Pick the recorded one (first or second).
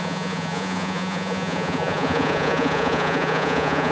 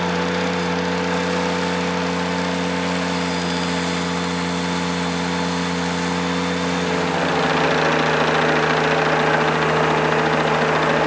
second